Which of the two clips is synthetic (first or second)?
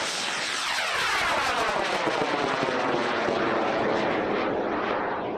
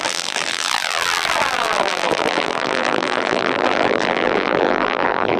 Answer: second